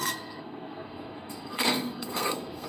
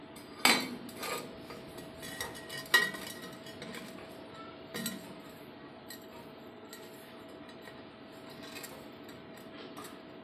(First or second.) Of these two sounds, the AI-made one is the first